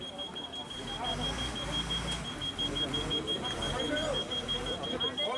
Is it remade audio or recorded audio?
recorded